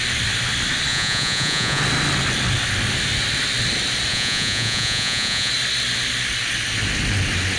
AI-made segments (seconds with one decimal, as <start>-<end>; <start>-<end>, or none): 0.9-1.8; 4.1-5.5